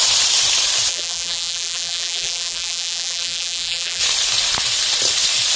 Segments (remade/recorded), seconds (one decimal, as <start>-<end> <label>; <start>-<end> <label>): 0.0-0.9 recorded; 0.9-4.0 remade; 4.0-5.6 recorded